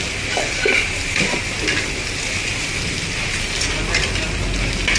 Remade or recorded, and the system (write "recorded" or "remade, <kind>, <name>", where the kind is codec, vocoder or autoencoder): recorded